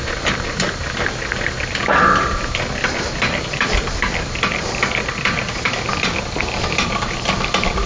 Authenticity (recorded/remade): recorded